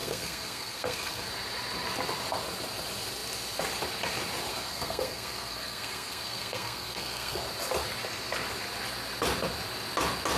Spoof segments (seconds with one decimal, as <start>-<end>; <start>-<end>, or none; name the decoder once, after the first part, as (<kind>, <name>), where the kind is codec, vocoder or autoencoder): 0.0-1.3 (codec, SNAC); 4.5-7.4

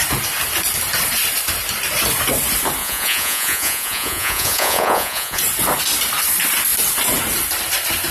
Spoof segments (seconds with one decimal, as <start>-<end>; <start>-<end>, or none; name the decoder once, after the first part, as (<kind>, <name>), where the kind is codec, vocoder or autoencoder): 2.8-5.4 (vocoder, Vocos)

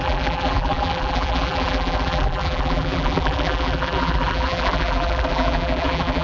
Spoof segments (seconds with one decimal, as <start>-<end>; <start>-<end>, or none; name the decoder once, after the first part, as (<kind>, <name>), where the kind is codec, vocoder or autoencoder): 0.0-6.2 (vocoder, BigVGAN v2)

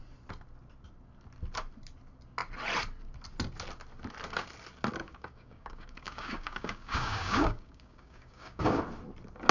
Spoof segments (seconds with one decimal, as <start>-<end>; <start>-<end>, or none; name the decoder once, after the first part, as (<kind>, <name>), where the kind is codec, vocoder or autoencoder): 5.0-8.8 (codec, DAC)

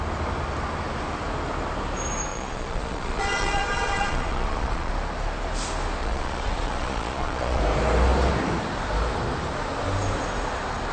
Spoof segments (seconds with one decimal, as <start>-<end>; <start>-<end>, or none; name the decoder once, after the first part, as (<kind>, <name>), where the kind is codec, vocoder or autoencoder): 2.3-4.9 (vocoder, Vocos); 6.0-7.6

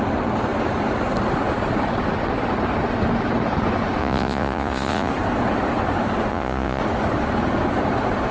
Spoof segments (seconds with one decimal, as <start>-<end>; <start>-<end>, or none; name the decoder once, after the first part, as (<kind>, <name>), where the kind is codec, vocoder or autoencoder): 4.0-5.1 (vocoder, Vocos); 6.3-6.8

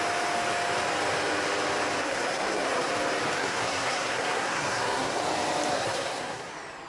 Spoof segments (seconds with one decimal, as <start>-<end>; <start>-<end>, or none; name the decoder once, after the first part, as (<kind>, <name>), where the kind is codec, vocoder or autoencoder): 2.0-2.9 (codec, SNAC); 3.4-5.2; 5.7-6.5

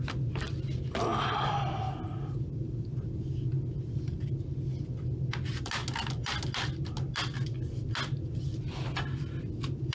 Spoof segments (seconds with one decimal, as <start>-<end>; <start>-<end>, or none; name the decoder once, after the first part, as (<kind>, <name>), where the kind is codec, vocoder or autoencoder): none